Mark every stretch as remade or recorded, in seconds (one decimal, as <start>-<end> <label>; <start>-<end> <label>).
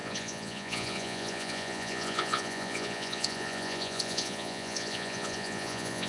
0.0-6.1 remade